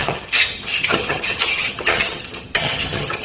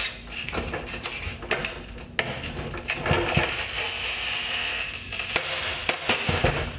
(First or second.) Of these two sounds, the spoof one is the first